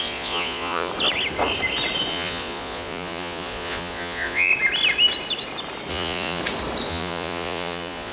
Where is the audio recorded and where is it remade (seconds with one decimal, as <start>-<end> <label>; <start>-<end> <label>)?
0.0-0.9 remade; 0.9-2.1 recorded; 2.1-4.5 remade; 4.5-5.9 recorded; 5.9-6.4 remade; 6.4-6.9 recorded; 6.9-8.1 remade